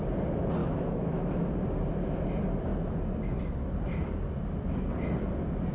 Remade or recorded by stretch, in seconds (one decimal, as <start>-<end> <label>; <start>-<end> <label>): 0.0-0.6 recorded; 0.6-1.5 remade; 1.5-5.7 recorded